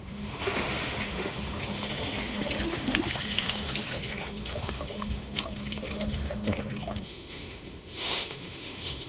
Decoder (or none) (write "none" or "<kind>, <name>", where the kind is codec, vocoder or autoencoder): autoencoder, DAC-VAE